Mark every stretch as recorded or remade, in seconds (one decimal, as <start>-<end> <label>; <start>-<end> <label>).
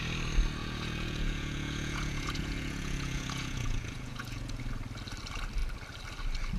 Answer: 0.0-0.6 recorded; 0.6-4.6 remade; 4.6-6.6 recorded